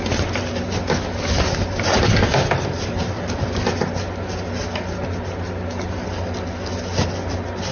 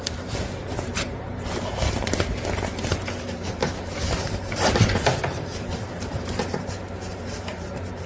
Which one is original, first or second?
first